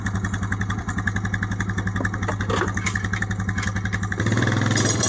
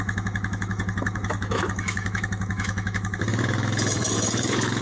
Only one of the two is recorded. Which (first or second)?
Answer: first